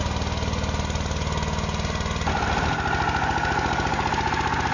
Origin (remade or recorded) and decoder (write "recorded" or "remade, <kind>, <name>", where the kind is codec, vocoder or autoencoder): recorded